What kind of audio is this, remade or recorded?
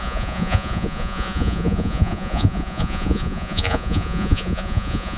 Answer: remade